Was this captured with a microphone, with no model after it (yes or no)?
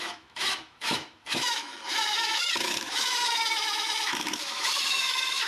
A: no